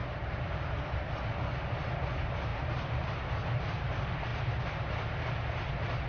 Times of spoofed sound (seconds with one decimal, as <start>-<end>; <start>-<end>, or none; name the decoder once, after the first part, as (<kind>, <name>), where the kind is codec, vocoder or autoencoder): 2.5-3.2 (vocoder, BigVGAN v2); 4.3-5.2